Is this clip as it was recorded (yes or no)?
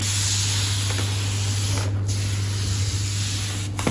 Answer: yes